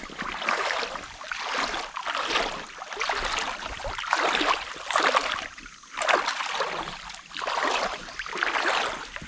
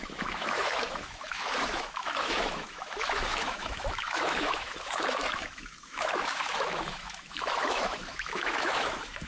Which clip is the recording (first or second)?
first